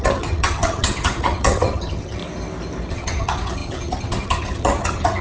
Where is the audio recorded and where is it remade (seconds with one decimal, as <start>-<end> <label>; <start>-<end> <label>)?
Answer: 0.0-2.2 remade; 2.2-2.9 recorded; 2.9-5.2 remade